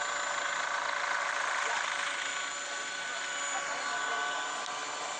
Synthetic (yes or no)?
no